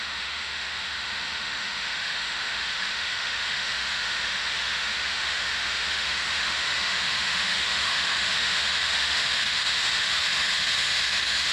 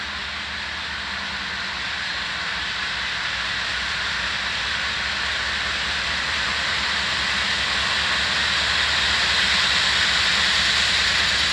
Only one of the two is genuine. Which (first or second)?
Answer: second